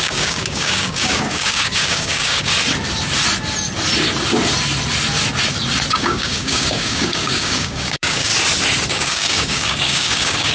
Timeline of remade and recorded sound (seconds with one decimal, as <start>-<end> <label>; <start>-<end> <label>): 0.0-2.5 remade; 2.5-5.9 recorded; 5.9-8.3 remade; 8.3-8.9 recorded; 8.9-10.5 remade